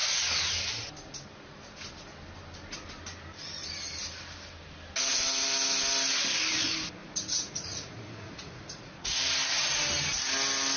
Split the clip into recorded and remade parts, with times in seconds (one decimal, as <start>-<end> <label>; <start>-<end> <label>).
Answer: 0.0-7.0 recorded; 7.0-9.2 remade; 9.2-10.8 recorded

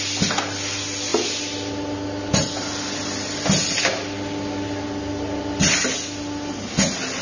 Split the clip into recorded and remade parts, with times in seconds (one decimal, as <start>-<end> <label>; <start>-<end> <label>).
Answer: 0.0-7.2 recorded

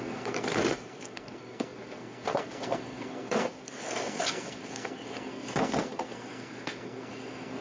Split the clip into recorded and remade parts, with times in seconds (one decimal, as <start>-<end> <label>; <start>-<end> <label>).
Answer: 0.0-7.6 remade

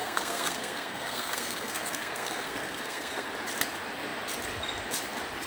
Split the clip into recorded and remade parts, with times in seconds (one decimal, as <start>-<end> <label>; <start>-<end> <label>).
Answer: 0.0-3.3 remade; 3.3-5.5 recorded

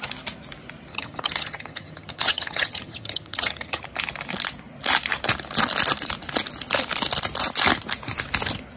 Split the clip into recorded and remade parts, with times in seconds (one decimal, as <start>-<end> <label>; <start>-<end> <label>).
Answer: 0.0-0.9 recorded; 0.9-3.8 remade; 3.8-8.8 recorded

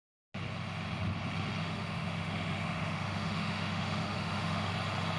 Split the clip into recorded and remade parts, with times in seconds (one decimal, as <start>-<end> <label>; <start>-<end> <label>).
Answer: 0.0-1.6 recorded; 1.6-4.7 remade; 4.7-5.2 recorded

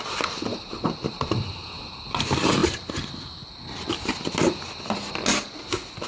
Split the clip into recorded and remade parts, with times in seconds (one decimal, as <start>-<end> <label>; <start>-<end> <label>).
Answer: 0.0-0.5 recorded; 0.5-2.0 remade; 2.0-2.6 recorded; 2.6-3.4 remade; 3.4-6.1 recorded

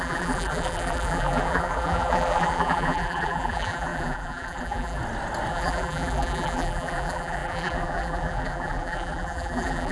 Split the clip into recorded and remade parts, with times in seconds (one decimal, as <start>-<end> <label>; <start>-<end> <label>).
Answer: 0.0-5.0 remade; 5.0-5.5 recorded; 5.5-9.9 remade